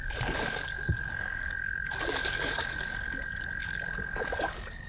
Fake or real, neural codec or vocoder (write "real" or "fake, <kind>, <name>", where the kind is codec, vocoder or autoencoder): fake, codec, DAC